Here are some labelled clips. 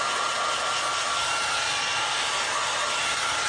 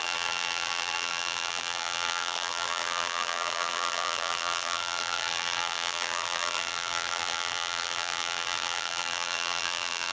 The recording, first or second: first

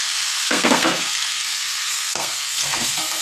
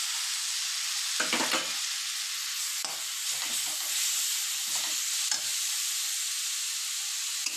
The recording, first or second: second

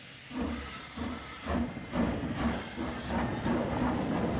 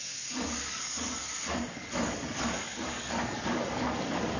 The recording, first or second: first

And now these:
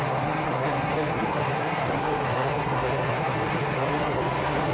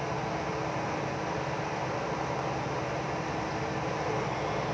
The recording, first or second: second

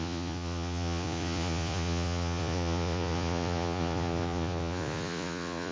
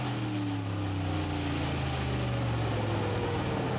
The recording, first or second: second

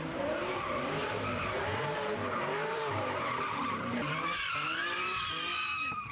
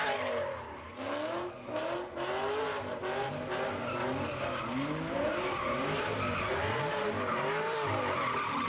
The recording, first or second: second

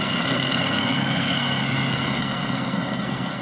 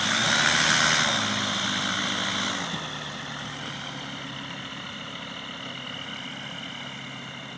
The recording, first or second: second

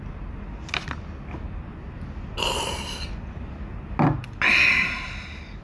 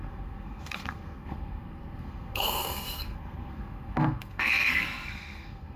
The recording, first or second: first